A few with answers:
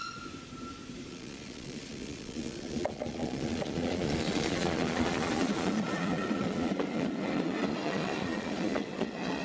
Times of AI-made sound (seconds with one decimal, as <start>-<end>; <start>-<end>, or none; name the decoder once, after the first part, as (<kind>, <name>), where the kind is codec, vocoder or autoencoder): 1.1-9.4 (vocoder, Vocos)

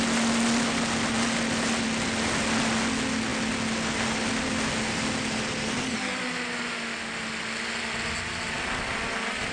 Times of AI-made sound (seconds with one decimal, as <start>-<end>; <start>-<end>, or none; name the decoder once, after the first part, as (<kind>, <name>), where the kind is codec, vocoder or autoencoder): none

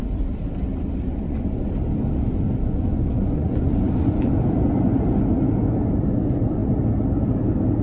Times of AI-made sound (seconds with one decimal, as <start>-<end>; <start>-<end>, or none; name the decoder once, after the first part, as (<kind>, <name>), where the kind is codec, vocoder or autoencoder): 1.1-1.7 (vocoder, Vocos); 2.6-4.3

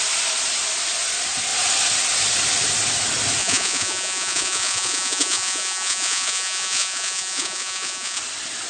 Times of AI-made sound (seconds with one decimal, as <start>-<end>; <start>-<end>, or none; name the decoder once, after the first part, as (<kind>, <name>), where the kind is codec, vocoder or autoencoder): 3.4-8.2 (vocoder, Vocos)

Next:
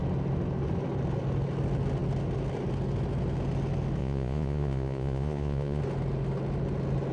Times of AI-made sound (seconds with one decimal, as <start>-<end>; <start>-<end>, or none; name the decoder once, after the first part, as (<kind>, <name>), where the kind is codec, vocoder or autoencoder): 4.0-5.8 (vocoder, Vocos)

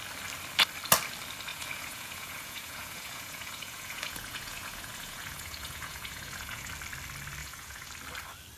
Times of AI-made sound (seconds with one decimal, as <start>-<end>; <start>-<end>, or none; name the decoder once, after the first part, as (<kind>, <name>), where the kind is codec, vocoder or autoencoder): 1.5-6.7 (vocoder, Vocos); 7.4-7.9

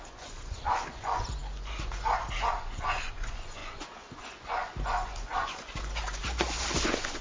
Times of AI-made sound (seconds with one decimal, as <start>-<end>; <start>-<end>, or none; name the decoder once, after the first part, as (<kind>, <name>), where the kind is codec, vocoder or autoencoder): 0.0-7.2 (vocoder, Vocos)